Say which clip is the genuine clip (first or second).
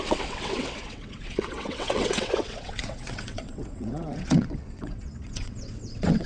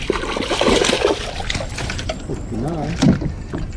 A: second